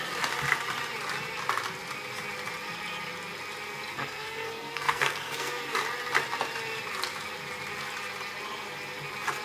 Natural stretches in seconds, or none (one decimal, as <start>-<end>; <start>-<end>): 0.0-3.9; 5.6-9.4

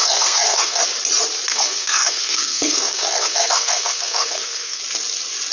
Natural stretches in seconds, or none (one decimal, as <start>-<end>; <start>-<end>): 0.8-1.5; 4.8-5.5

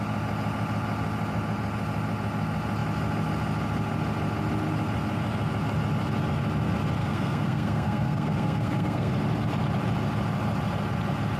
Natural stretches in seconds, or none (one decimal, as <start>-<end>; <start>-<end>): 0.0-7.0; 9.1-11.4

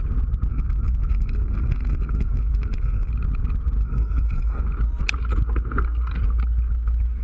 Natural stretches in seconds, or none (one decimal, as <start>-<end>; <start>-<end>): 0.0-0.5; 3.1-3.8; 4.6-7.2

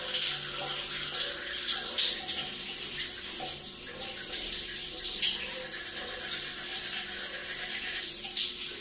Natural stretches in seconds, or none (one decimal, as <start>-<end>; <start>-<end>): 0.0-8.8

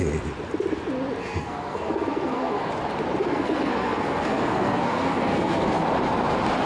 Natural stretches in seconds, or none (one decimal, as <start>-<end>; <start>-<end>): 0.0-1.2; 2.7-3.2; 5.8-6.7